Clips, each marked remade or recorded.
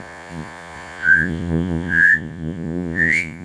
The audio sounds remade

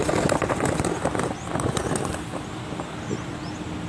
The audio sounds recorded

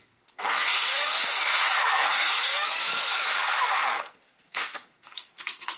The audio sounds remade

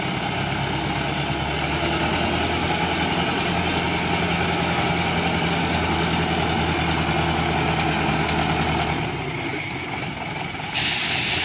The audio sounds recorded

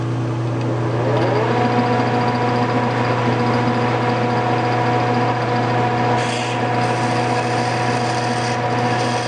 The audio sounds recorded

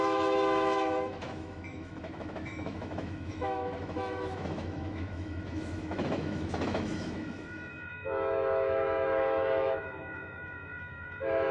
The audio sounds remade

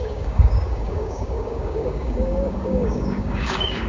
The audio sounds remade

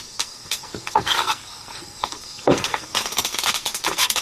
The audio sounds remade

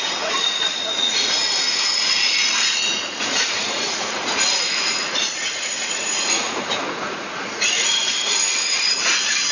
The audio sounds remade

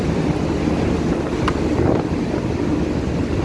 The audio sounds recorded